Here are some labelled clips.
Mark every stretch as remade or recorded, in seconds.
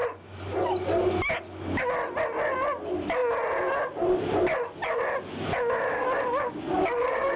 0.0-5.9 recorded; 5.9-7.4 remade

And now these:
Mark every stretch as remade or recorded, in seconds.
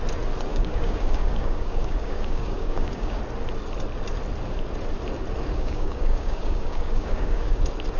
0.0-0.5 recorded; 0.5-3.2 remade; 3.2-5.5 recorded; 5.5-7.6 remade; 7.6-8.0 recorded